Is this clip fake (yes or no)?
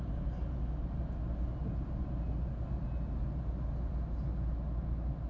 no